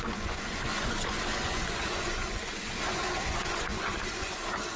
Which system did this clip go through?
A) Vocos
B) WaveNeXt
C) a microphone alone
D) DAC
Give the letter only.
A